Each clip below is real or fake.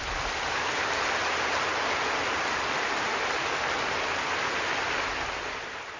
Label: real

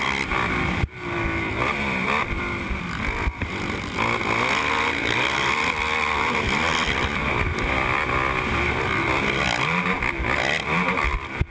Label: real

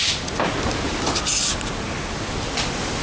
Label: real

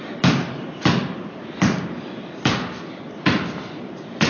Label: real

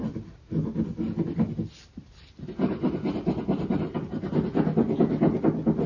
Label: real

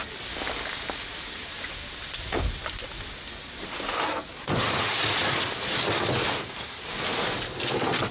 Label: real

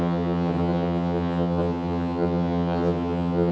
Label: fake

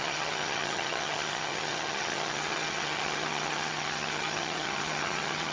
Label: fake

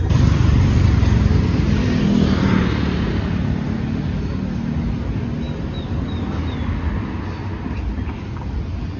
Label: real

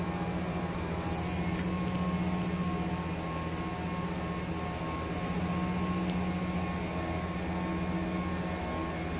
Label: real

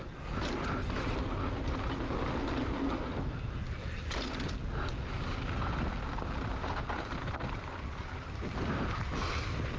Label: real